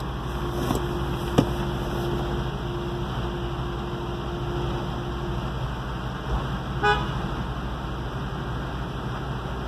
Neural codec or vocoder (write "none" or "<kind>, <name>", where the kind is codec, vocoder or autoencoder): none